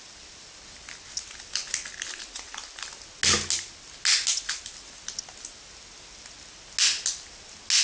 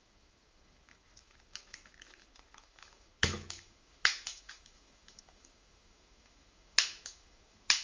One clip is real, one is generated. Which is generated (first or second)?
second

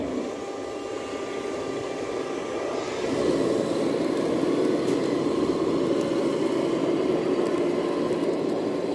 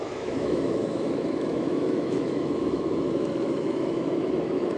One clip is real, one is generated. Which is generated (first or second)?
second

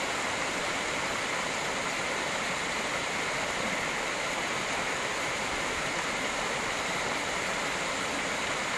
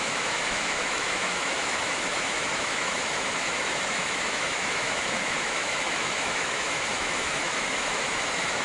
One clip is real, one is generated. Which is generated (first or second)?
second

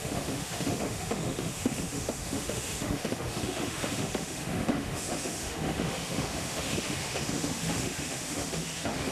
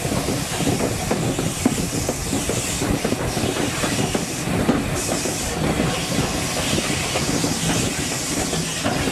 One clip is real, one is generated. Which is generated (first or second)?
first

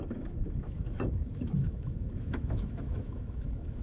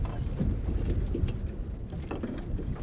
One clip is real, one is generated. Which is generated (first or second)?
first